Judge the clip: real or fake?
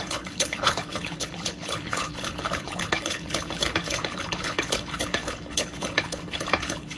fake